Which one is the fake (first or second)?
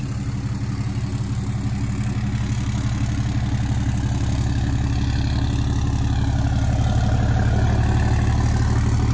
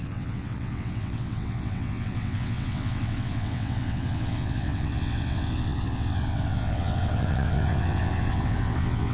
second